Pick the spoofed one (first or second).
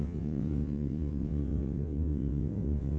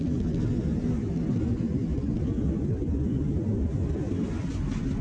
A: first